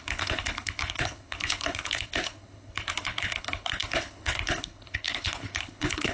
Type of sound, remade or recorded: remade